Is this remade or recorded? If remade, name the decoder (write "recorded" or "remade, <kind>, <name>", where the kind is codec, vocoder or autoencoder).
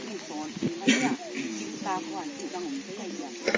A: recorded